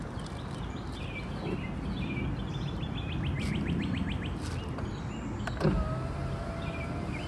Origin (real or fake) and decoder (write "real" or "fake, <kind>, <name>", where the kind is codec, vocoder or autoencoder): real